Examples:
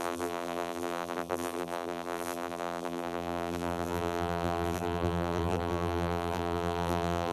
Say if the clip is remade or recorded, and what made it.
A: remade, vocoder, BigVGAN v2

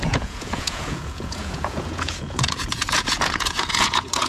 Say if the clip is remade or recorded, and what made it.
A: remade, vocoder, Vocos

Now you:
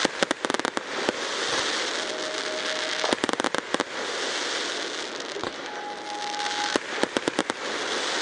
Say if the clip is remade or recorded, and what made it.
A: recorded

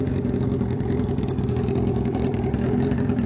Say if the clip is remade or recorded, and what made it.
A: remade, codec, DAC